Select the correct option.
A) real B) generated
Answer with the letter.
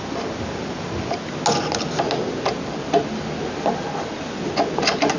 A